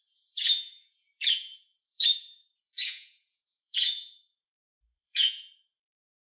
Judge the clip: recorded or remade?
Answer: remade